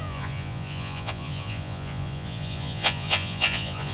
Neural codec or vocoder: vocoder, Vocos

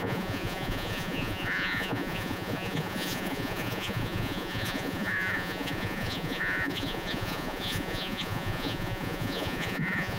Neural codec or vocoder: vocoder, Vocos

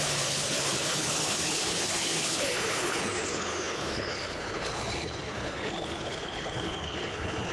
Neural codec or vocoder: codec, HILCodec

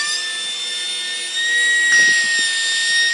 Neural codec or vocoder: none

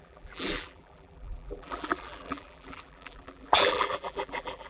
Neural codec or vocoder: vocoder, BigVGAN v2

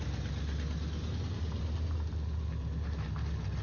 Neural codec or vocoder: none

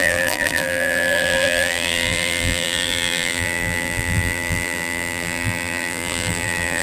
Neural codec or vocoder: vocoder, BigVGAN v2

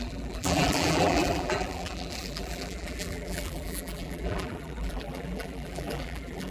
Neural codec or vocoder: vocoder, BigVGAN v2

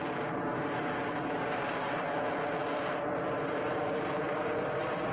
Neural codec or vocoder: none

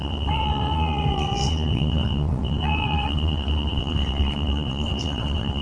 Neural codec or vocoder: vocoder, WaveNeXt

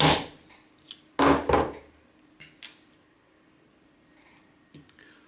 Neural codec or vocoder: none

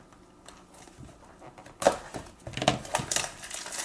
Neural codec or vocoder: none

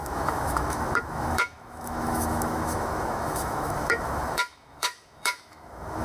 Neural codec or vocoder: autoencoder, DAC-VAE